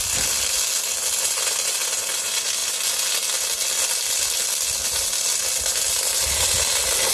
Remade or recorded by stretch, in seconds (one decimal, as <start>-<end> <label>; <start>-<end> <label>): 0.0-7.1 recorded